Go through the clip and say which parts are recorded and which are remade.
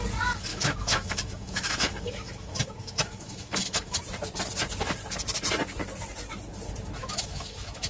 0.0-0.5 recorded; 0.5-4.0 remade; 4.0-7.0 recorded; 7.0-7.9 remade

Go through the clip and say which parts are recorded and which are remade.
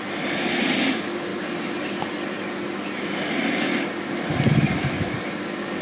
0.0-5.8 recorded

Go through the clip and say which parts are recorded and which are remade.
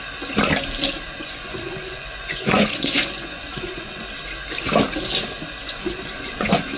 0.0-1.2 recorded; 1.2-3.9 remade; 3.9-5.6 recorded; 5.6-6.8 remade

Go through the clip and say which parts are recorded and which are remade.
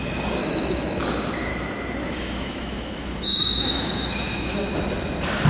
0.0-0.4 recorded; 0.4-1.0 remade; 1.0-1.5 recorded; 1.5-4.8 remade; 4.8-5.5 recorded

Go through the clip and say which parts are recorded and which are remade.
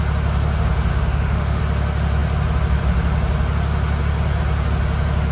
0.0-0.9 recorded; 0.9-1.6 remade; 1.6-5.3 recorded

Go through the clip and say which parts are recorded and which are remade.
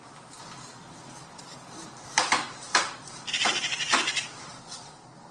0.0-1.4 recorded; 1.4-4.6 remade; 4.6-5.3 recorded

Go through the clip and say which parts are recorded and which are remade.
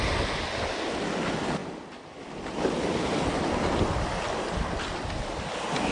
0.0-5.9 recorded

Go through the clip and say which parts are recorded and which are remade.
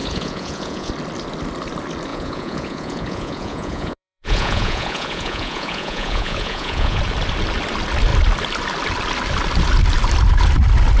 0.0-0.9 remade; 0.9-2.1 recorded; 2.1-7.0 remade; 7.0-11.0 recorded